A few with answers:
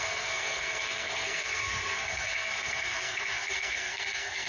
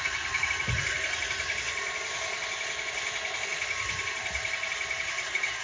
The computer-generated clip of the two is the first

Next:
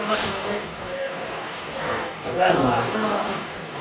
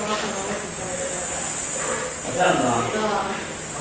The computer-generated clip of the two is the first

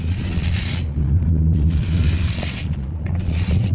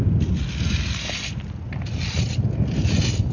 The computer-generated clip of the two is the first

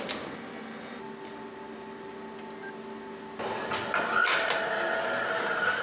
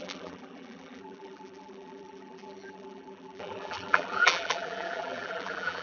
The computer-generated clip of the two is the second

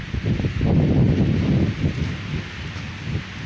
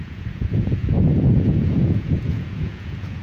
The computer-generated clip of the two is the second